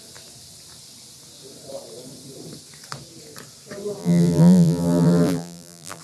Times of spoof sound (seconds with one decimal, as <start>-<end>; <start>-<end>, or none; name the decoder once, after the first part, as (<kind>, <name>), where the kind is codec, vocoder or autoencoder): 4.0-6.0 (vocoder, BigVGAN v2)